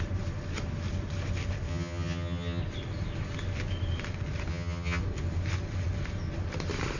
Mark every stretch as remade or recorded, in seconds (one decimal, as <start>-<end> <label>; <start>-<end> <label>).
0.0-1.7 recorded; 1.7-2.6 remade; 2.6-4.5 recorded; 4.5-5.0 remade; 5.0-7.0 recorded